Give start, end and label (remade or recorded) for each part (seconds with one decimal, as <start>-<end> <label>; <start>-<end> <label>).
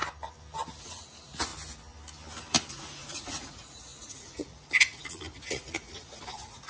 0.0-0.8 recorded; 0.8-1.5 remade; 1.5-2.7 recorded; 2.7-6.7 remade